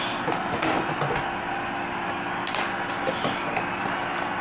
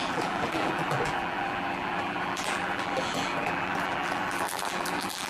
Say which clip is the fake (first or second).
second